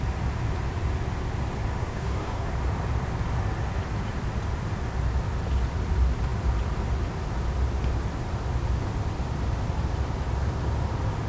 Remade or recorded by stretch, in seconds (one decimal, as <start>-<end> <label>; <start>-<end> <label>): 0.0-1.8 recorded; 1.8-2.5 remade; 2.5-11.3 recorded